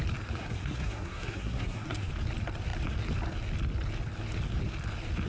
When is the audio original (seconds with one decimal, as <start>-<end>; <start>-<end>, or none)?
0.0-0.4; 2.1-5.3